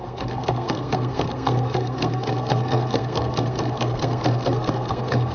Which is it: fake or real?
fake